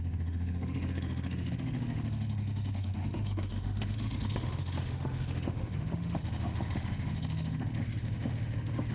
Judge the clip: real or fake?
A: fake